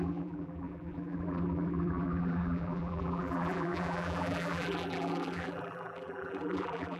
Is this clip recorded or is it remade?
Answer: remade